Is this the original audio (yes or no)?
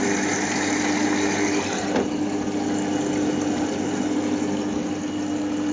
yes